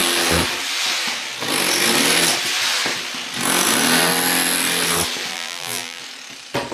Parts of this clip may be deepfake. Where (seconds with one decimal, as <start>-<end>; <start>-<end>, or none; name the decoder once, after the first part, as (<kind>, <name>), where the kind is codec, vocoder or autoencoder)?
5.3-6.0 (vocoder, BigVGAN v2)